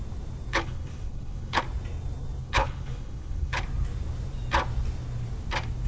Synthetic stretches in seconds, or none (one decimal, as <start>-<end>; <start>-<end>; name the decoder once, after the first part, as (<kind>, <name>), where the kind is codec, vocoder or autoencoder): 0.5-1.6 (codec, HILCodec); 2.4-3.6